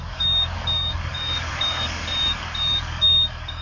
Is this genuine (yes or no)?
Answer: no